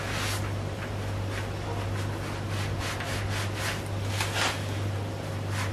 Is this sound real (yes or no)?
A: yes